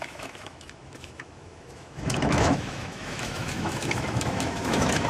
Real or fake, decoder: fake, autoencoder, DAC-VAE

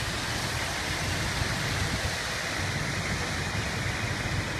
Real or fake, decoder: real